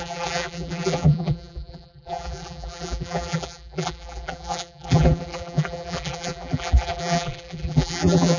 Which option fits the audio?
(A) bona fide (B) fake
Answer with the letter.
B